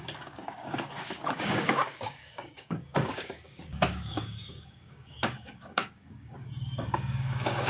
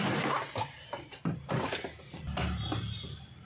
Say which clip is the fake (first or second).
first